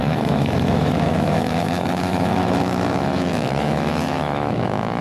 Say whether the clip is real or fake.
fake